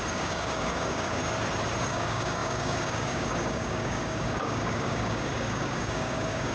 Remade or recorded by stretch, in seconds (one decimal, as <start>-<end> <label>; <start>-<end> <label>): 0.0-1.2 remade; 1.2-1.8 recorded; 1.8-6.5 remade